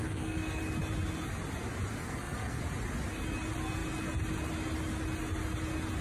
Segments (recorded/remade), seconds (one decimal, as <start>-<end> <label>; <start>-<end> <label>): 0.0-0.6 remade; 0.6-2.0 recorded; 2.0-2.6 remade; 2.6-6.0 recorded